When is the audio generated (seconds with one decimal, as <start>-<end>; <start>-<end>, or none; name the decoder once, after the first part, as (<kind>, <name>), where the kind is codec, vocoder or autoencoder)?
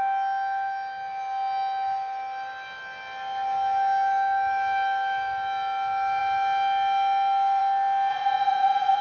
8.1-9.0 (vocoder, Vocos)